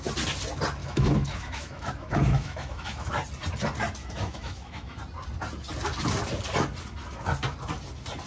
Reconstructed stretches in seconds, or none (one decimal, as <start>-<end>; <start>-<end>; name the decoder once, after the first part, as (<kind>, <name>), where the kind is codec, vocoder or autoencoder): 0.8-3.1 (autoencoder, DAC-VAE); 4.0-5.0